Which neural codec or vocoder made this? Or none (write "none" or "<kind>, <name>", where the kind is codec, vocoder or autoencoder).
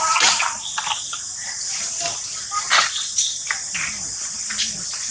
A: none